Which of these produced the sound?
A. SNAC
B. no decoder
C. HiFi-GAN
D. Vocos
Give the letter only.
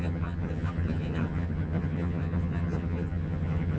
C